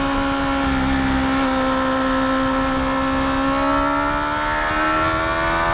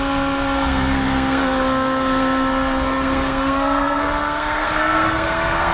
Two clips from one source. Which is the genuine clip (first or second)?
first